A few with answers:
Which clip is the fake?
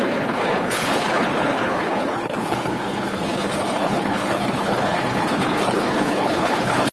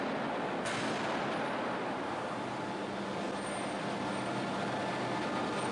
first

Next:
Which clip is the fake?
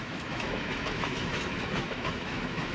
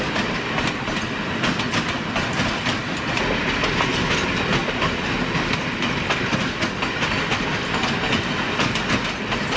first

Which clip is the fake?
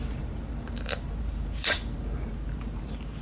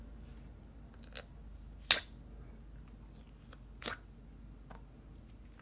first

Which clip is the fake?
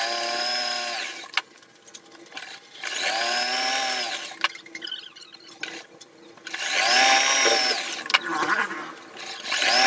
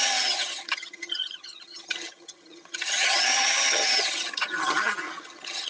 second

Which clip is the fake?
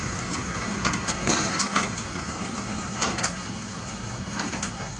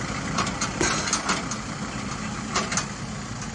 first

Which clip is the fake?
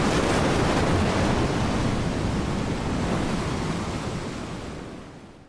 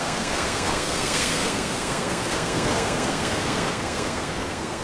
second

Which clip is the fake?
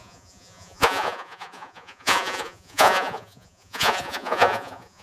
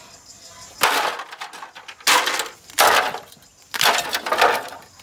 first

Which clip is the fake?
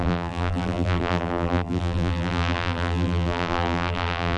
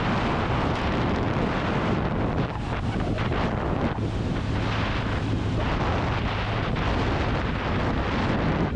first